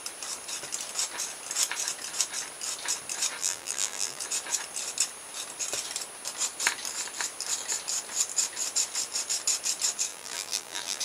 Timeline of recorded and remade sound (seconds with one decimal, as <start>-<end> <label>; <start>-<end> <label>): 0.0-3.4 recorded; 3.4-4.2 remade; 4.2-10.1 recorded; 10.1-11.0 remade